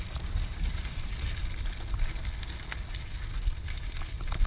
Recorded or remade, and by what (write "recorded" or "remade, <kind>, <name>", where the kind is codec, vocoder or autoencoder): recorded